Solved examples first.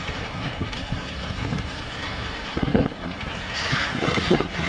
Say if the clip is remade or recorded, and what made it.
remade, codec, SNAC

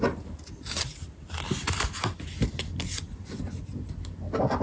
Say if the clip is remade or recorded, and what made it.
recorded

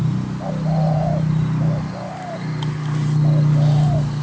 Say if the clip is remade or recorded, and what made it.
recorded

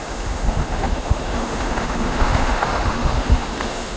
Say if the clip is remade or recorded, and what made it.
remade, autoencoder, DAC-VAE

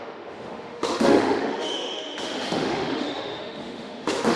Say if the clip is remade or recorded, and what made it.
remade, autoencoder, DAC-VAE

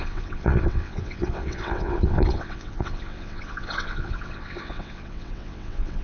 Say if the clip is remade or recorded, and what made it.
remade, vocoder, WaveNeXt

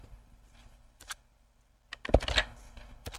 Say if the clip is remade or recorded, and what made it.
recorded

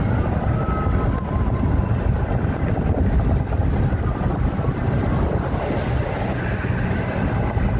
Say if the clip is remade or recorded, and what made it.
recorded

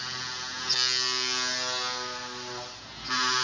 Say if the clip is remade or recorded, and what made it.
recorded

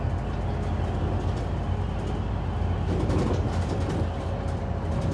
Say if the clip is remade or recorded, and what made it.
recorded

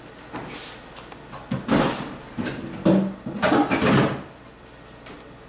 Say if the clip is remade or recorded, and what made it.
recorded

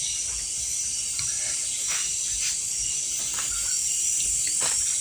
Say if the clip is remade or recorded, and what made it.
recorded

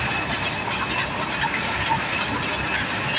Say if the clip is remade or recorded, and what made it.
recorded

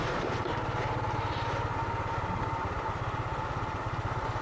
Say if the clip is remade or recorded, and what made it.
recorded